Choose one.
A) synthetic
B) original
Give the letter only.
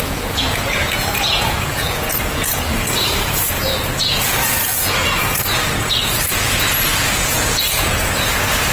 A